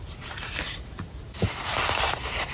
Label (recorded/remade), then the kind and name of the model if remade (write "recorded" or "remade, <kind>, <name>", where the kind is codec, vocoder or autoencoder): remade, vocoder, BigVGAN v2